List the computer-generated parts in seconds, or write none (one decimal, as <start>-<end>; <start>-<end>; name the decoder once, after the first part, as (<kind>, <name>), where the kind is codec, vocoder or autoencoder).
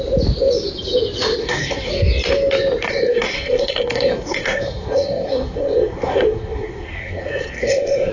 1.4-1.9 (codec, SNAC); 2.9-8.1